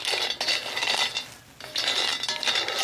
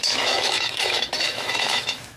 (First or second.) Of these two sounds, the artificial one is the second